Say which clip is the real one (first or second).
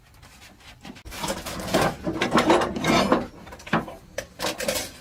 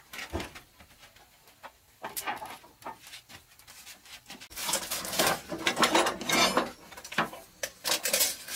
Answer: second